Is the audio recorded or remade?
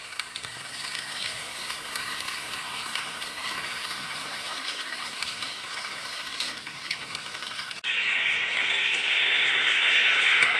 remade